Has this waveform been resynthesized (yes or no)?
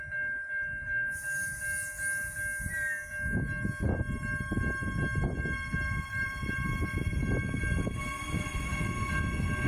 no